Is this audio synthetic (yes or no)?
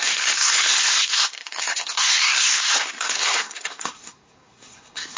yes